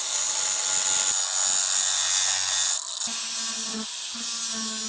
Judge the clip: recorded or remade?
recorded